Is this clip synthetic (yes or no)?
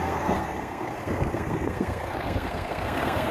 yes